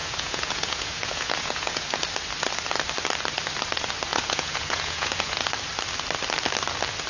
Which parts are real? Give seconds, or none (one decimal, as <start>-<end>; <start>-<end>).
1.9-4.1; 5.5-7.1